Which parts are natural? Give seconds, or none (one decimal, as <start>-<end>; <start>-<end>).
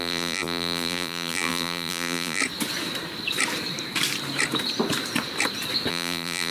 2.4-5.9